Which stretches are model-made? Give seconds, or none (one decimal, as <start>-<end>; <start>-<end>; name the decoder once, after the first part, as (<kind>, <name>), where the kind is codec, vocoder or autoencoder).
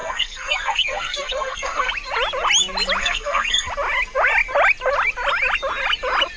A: 0.0-1.9 (codec, SNAC); 3.0-3.7